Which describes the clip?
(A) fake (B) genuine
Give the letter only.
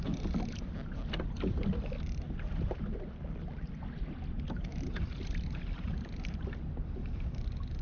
B